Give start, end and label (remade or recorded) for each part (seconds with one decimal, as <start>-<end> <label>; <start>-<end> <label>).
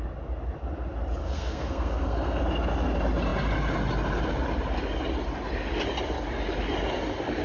0.0-1.2 recorded; 1.2-2.4 remade; 2.4-7.4 recorded